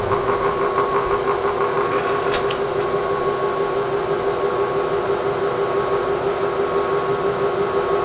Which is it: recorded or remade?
recorded